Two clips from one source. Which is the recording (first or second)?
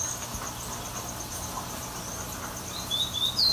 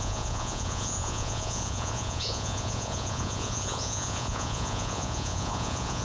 first